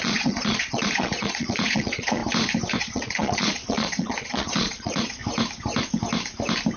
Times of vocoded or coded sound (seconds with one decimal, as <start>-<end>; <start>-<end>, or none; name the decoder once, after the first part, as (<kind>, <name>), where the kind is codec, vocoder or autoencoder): 0.0-2.2 (vocoder, Vocos); 2.8-5.2